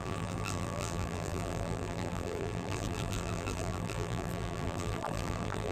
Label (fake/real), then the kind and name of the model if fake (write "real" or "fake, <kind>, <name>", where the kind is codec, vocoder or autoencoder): fake, vocoder, BigVGAN v2